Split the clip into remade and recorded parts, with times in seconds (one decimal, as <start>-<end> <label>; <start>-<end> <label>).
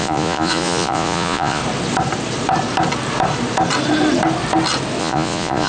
0.0-1.6 remade; 1.6-5.0 recorded; 5.0-5.7 remade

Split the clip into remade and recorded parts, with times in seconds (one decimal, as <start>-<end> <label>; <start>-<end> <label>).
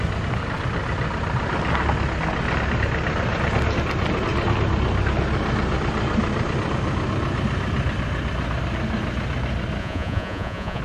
0.0-9.8 recorded; 9.8-10.8 remade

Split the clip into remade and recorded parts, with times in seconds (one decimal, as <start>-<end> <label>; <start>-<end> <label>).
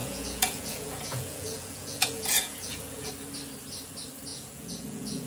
0.0-3.1 remade; 3.1-4.3 recorded; 4.3-5.3 remade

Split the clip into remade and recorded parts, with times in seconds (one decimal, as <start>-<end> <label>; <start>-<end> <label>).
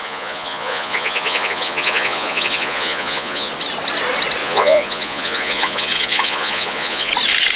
0.0-3.5 remade; 3.5-4.4 recorded; 4.4-7.1 remade; 7.1-7.6 recorded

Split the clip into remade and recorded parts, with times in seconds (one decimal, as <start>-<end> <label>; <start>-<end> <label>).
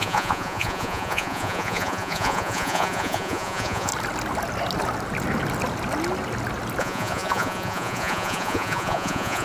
0.0-3.9 remade; 3.9-6.8 recorded; 6.8-9.4 remade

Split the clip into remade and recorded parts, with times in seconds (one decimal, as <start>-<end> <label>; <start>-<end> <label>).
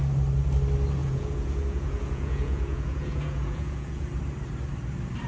0.0-1.0 recorded; 1.0-4.2 remade; 4.2-5.3 recorded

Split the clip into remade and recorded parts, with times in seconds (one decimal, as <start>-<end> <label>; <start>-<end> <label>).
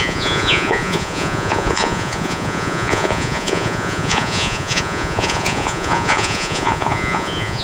0.0-7.6 remade